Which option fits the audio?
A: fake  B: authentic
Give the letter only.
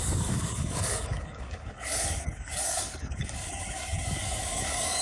A